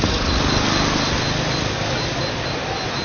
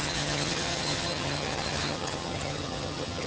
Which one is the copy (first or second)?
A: second